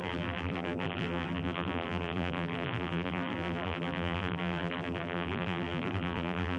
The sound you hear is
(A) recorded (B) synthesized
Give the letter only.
B